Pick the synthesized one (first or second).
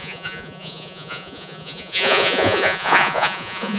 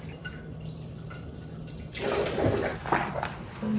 first